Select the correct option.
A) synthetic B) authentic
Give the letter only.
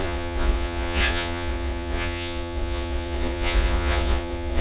A